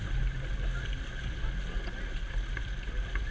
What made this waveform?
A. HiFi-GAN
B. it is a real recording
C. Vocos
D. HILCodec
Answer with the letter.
B